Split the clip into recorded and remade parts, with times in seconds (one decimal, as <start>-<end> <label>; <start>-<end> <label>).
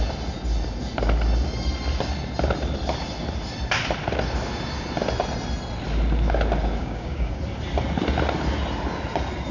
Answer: 0.0-6.8 recorded; 6.8-7.4 remade; 7.4-9.5 recorded